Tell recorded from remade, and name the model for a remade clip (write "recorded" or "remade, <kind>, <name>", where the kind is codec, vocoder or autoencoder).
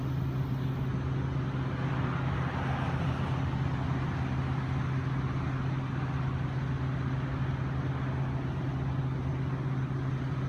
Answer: recorded